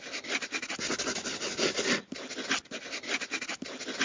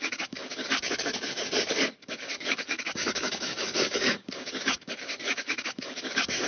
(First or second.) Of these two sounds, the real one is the first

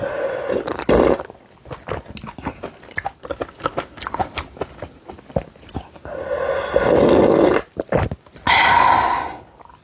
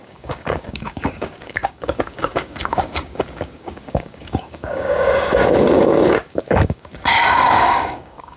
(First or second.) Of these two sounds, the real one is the first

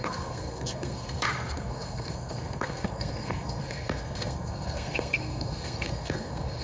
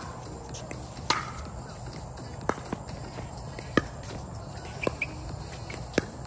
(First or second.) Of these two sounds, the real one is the second